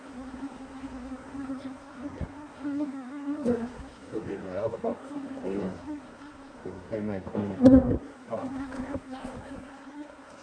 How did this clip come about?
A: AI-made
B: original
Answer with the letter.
A